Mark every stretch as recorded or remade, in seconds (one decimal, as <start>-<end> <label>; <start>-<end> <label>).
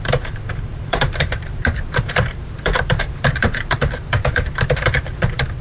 0.0-5.6 remade